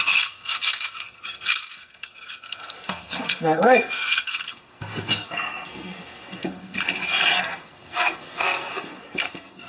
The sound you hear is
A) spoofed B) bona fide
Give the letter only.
A